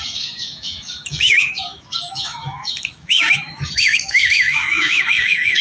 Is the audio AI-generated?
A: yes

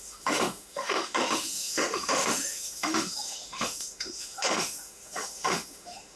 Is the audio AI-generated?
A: yes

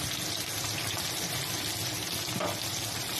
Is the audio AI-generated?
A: no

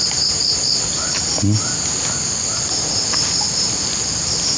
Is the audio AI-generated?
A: no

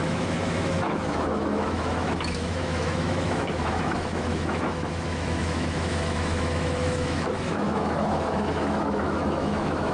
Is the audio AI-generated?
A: yes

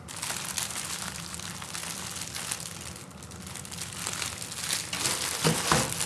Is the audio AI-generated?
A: no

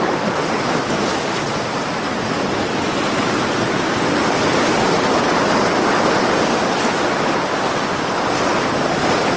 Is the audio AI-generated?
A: no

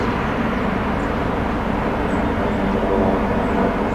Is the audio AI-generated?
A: no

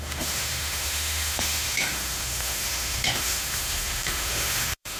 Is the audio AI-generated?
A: yes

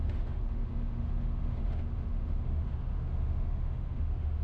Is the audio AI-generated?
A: yes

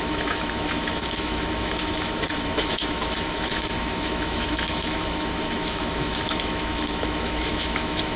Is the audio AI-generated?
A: yes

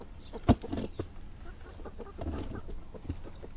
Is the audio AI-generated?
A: no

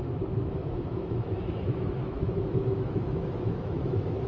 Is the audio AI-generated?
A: yes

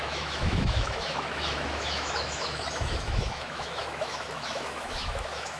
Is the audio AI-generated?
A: yes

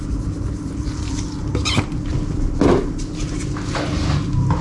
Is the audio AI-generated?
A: no